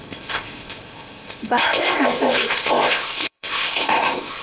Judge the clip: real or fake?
fake